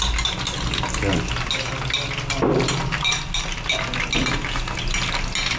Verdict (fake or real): real